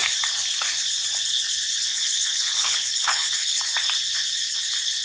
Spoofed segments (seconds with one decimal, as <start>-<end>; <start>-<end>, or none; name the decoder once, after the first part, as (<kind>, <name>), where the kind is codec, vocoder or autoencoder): 1.9-3.6 (codec, HILCodec)